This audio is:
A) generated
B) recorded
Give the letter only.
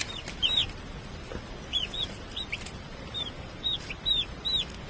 B